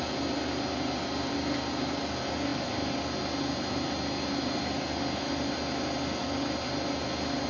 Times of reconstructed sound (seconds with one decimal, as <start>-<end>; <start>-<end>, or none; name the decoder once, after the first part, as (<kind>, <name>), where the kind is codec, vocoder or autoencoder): none